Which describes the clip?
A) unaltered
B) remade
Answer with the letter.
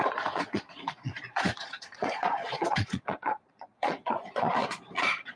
B